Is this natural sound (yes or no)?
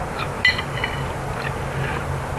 yes